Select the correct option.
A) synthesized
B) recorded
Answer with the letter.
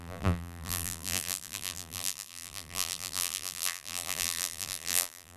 A